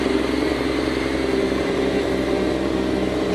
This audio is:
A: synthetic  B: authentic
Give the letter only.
A